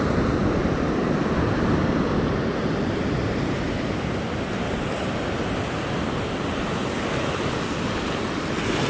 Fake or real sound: real